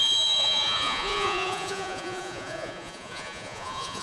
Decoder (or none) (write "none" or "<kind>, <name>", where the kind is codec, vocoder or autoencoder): vocoder, Vocos